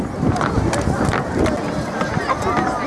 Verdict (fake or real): real